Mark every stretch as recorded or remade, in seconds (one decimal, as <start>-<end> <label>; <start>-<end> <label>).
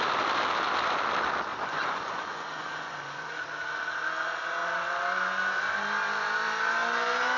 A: 0.0-1.5 recorded; 1.5-3.3 remade; 3.3-7.4 recorded